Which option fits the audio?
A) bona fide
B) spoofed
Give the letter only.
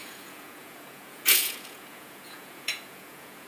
B